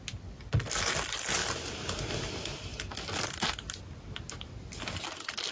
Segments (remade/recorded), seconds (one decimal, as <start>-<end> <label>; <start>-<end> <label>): 0.0-1.4 recorded; 1.4-2.1 remade; 2.1-5.5 recorded